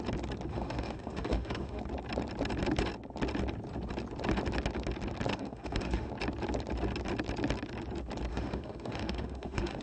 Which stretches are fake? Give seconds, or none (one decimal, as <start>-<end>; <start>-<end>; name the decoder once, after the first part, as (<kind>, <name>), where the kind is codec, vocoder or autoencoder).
0.5-1.8 (autoencoder, DAC-VAE); 5.3-6.1; 8.3-9.8